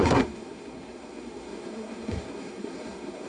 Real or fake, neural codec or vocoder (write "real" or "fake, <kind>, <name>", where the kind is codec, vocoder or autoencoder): fake, codec, SNAC